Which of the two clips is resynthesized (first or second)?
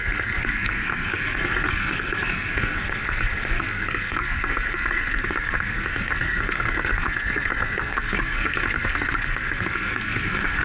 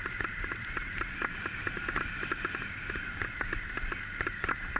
first